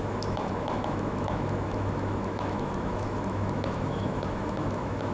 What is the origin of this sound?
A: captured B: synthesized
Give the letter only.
B